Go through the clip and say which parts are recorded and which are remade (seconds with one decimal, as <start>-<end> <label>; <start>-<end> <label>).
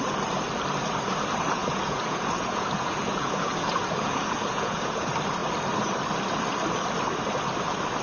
0.0-1.6 recorded; 1.6-5.0 remade; 5.0-8.0 recorded